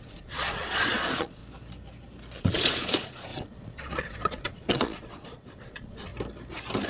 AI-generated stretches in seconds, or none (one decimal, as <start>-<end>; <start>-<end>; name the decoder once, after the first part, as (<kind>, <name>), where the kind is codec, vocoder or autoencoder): 0.0-1.4 (vocoder, Vocos); 2.4-6.1